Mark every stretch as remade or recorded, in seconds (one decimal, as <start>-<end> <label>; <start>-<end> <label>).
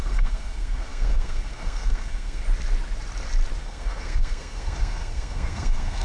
0.0-2.4 remade; 2.4-3.6 recorded; 3.6-6.0 remade